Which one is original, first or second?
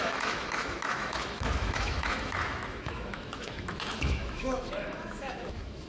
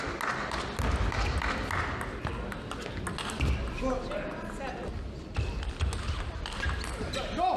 second